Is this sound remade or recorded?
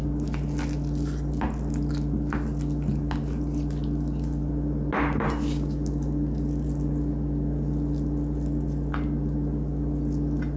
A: recorded